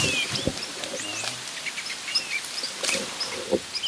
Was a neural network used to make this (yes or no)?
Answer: no